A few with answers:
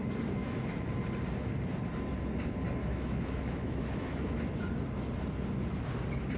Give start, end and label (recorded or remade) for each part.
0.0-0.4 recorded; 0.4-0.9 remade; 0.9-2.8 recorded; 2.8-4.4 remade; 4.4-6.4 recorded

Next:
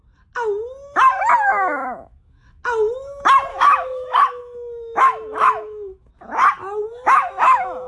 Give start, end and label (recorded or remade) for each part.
0.0-1.5 recorded; 1.5-2.6 remade; 2.6-3.5 recorded; 3.5-6.1 remade; 6.1-6.9 recorded; 6.9-7.9 remade